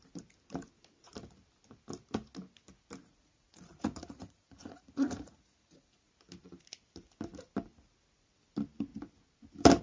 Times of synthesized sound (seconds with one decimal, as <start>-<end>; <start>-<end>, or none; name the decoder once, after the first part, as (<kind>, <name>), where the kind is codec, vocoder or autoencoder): 3.0-6.1 (vocoder, Vocos)